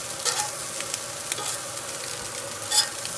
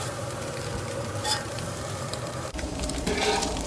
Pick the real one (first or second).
first